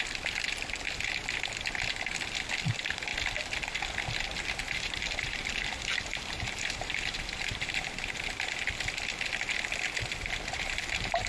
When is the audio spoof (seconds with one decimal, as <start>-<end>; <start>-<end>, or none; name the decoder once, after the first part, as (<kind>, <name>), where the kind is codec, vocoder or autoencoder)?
4.6-8.5 (vocoder, BigVGAN v2); 10.5-11.3